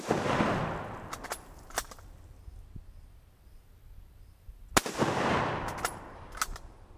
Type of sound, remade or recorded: recorded